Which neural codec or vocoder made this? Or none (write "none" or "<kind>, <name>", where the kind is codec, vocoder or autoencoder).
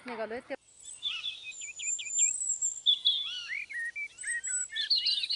none